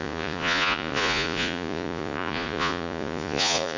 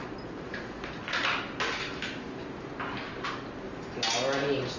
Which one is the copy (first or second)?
first